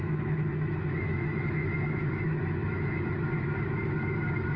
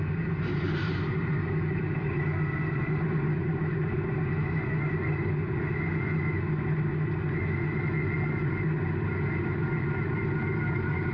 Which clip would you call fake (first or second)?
first